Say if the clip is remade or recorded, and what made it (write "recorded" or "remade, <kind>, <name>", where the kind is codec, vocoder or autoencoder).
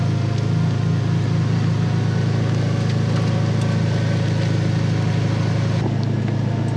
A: recorded